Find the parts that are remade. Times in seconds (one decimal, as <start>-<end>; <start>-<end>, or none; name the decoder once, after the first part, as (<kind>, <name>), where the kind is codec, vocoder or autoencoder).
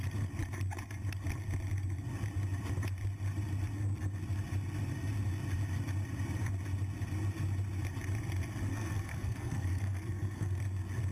8.7-10.6 (codec, SNAC)